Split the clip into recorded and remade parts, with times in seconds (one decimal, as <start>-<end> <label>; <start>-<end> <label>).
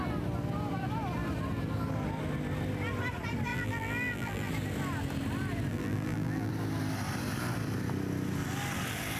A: 0.0-3.5 recorded; 3.5-4.5 remade; 4.5-5.7 recorded; 5.7-6.5 remade; 6.5-9.2 recorded